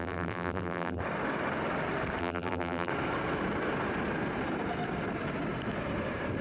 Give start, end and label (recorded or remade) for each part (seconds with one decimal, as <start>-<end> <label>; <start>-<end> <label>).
0.0-1.0 remade; 1.0-2.2 recorded; 2.2-2.9 remade; 2.9-6.4 recorded